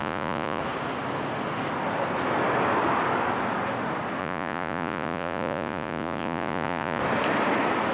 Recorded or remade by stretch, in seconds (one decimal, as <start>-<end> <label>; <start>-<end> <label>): 0.0-0.6 remade; 0.6-4.2 recorded; 4.2-7.0 remade; 7.0-7.9 recorded